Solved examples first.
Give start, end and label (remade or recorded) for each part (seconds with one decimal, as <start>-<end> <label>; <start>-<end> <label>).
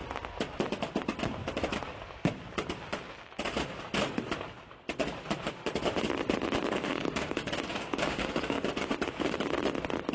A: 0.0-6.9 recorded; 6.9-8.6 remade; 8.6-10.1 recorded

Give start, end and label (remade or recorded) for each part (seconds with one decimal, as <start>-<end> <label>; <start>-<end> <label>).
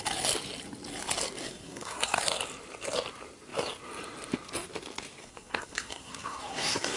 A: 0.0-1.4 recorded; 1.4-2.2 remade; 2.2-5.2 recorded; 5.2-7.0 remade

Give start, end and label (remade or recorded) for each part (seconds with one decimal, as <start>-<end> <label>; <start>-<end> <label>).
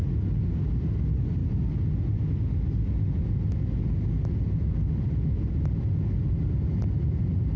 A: 0.0-7.6 recorded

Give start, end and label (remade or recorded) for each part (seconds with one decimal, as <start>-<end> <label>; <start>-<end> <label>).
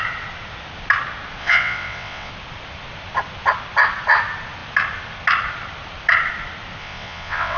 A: 0.0-1.4 recorded; 1.4-2.3 remade; 2.3-6.8 recorded; 6.8-7.6 remade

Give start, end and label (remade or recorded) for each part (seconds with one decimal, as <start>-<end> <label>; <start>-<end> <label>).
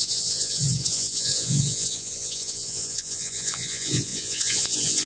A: 0.0-5.1 remade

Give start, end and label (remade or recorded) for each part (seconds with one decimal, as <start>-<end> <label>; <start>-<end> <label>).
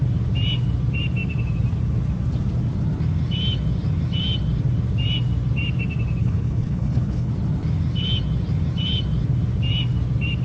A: 0.0-6.2 recorded; 6.2-7.3 remade; 7.3-10.4 recorded